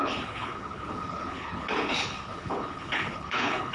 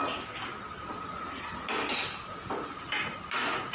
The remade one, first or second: first